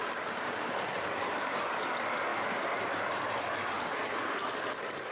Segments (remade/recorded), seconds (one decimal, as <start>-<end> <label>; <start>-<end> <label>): 0.0-5.1 recorded